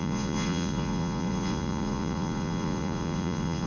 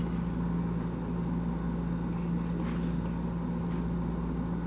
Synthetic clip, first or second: first